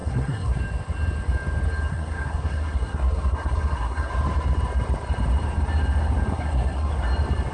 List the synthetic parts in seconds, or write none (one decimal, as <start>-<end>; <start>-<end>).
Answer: 0.0-0.6; 1.9-4.1; 6.3-6.9